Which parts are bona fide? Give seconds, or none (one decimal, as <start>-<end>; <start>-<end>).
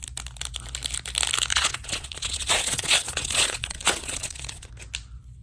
0.0-1.5; 4.7-5.4